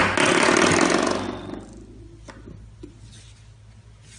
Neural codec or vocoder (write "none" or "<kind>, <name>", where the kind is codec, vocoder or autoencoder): none